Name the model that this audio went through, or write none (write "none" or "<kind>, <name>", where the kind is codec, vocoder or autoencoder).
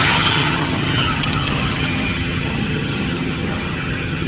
vocoder, HiFi-GAN